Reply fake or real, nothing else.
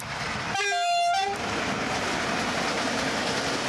real